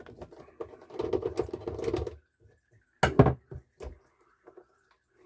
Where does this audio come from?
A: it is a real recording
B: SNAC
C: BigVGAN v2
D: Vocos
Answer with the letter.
A